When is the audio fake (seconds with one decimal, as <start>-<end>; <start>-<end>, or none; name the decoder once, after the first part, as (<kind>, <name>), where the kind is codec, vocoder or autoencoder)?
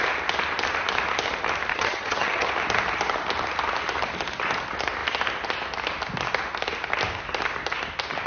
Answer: 1.7-2.5 (vocoder, HiFi-GAN)